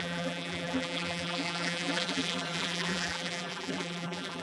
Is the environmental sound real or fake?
fake